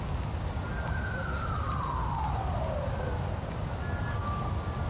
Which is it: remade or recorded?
recorded